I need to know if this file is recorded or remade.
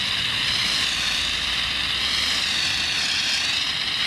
remade